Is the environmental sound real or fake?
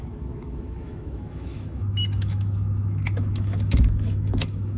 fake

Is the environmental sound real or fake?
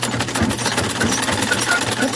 real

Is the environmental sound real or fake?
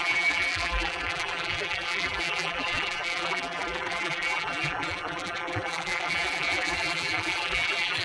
fake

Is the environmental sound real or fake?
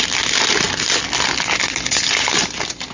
real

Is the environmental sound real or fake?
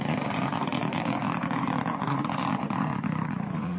fake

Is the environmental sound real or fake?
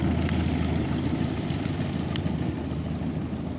real